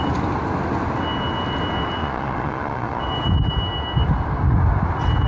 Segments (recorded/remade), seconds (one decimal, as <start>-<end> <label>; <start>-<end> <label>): 0.0-2.0 recorded; 2.0-3.0 remade; 3.0-5.3 recorded